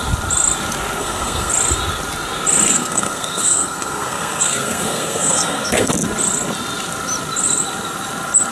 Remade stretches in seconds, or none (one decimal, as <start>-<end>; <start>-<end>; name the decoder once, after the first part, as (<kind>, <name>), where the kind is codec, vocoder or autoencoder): 1.0-1.5 (codec, SNAC); 2.7-5.9